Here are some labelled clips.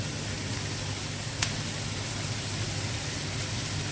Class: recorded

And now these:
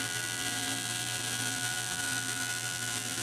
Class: remade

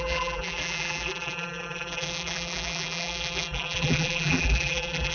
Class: remade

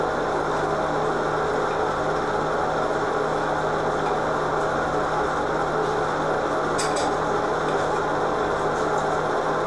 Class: recorded